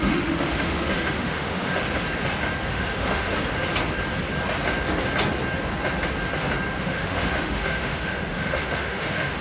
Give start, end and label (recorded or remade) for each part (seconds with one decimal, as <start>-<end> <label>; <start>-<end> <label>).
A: 0.0-1.8 remade; 1.8-2.7 recorded; 2.7-3.3 remade; 3.3-6.8 recorded; 6.8-9.4 remade